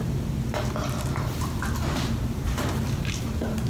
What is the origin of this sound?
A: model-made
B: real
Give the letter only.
B